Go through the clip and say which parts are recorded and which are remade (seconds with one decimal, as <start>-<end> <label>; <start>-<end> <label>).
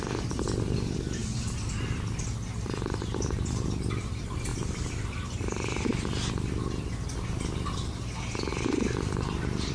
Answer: 0.0-9.7 recorded